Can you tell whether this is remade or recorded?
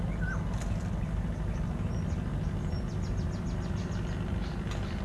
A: recorded